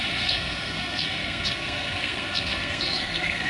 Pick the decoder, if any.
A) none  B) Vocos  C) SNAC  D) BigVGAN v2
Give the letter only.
C